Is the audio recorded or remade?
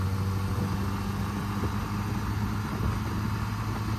recorded